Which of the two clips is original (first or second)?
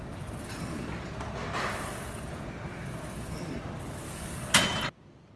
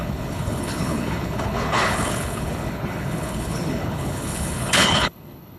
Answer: first